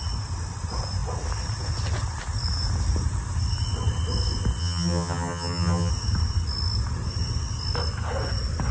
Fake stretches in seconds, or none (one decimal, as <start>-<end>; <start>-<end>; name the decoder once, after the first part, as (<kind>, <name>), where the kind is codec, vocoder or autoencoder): 4.6-5.9 (vocoder, HiFi-GAN)